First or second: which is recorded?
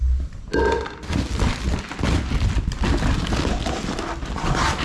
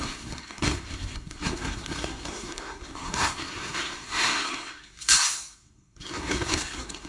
first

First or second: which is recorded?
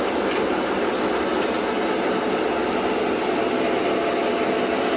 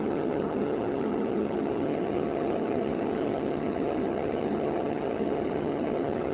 first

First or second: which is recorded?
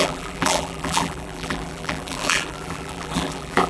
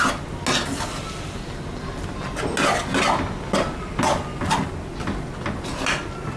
second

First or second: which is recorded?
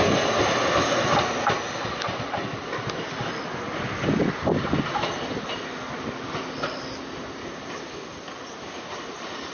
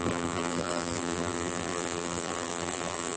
first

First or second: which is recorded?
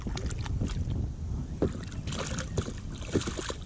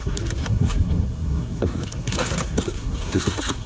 first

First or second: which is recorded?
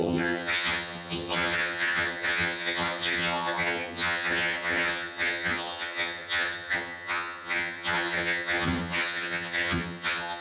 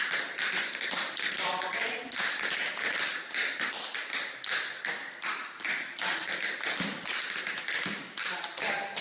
second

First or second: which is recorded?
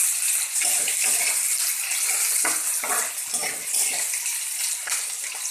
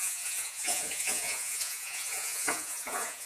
first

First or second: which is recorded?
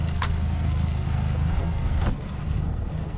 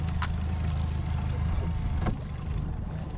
second